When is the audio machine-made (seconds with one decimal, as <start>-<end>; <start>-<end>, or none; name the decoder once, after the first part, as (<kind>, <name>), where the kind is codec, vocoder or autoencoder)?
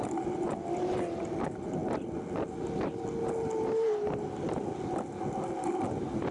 none